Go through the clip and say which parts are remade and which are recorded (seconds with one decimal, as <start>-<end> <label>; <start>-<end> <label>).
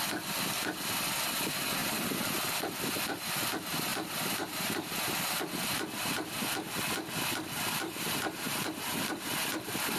0.0-1.8 recorded; 1.8-3.4 remade; 3.4-3.9 recorded; 3.9-5.4 remade; 5.4-7.7 recorded; 7.7-9.2 remade; 9.2-10.0 recorded